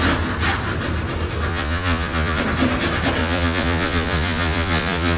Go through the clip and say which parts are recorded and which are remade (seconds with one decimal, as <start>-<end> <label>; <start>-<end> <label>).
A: 0.0-1.5 recorded; 1.5-2.4 remade; 2.4-3.2 recorded; 3.2-5.2 remade